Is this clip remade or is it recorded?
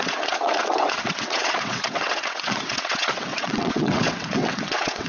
remade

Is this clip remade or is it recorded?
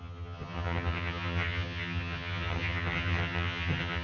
remade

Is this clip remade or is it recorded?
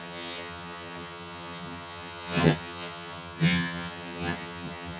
remade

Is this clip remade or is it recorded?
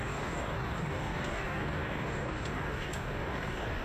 remade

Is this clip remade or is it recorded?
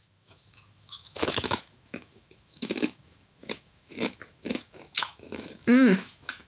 remade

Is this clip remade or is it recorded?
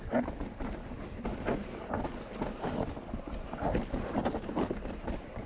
recorded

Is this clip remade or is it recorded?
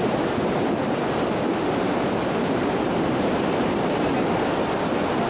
recorded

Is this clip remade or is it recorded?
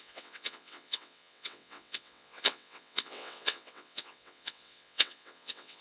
remade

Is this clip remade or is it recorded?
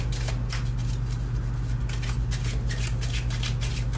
recorded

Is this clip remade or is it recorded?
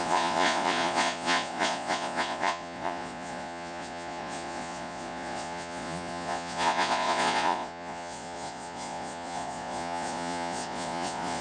remade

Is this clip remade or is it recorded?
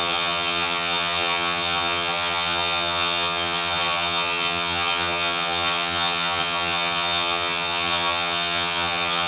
remade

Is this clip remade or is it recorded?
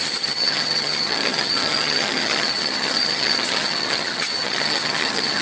remade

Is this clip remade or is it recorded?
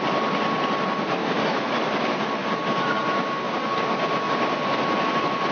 recorded